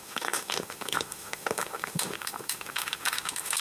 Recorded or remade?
remade